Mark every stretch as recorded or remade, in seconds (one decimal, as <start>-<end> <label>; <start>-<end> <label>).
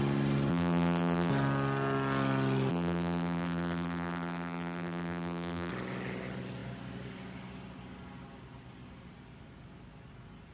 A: 0.0-0.5 recorded; 0.5-1.3 remade; 1.3-2.7 recorded; 2.7-5.7 remade; 5.7-10.5 recorded